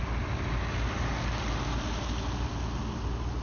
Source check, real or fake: real